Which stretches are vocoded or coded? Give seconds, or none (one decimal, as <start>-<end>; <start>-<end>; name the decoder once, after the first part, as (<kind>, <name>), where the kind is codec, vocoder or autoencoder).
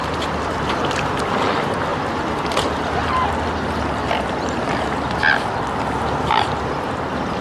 0.0-1.9 (vocoder, BigVGAN v2); 6.3-7.4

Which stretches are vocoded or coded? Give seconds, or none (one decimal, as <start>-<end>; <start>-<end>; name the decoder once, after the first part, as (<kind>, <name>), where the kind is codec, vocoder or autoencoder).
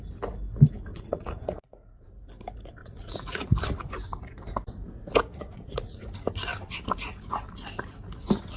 0.9-2.1 (vocoder, Vocos); 2.8-3.5; 5.3-6.0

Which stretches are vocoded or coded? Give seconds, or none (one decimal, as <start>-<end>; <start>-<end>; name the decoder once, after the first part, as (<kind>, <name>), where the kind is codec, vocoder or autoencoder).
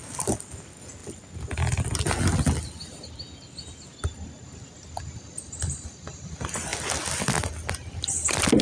none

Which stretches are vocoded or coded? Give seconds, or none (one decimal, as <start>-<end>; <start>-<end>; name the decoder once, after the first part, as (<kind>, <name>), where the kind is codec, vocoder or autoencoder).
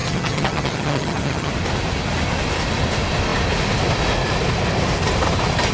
0.0-1.5 (vocoder, HiFi-GAN)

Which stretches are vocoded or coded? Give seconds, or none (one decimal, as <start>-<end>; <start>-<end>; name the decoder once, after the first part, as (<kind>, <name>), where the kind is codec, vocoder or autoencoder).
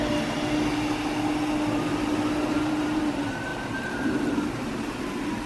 2.5-3.0 (vocoder, BigVGAN v2); 3.5-5.0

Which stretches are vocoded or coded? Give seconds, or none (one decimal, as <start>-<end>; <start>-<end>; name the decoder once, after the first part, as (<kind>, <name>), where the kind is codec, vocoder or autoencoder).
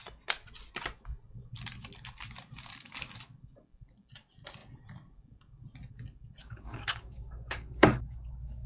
6.4-8.7 (codec, DAC)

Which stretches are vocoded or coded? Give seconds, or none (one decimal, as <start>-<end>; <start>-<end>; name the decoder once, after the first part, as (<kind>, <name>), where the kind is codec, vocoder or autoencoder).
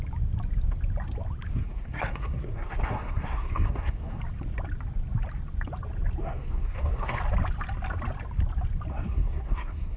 1.5-4.2 (codec, SNAC); 6.2-7.2; 8.9-10.0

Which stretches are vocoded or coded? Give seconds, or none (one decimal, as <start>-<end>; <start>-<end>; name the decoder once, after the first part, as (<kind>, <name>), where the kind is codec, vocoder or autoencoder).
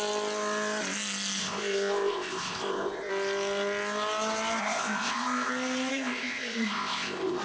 1.4-3.1 (codec, ZipCodec); 4.6-5.5; 5.9-7.4